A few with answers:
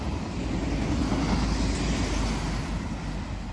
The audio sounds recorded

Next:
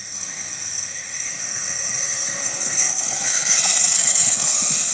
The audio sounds remade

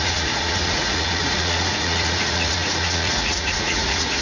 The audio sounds remade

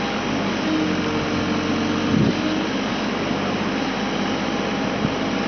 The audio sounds recorded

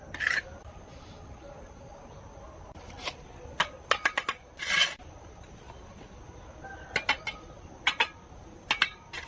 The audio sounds recorded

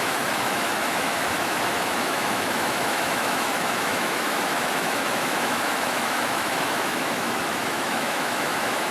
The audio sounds remade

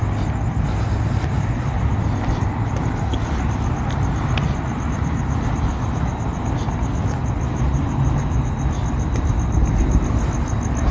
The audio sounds recorded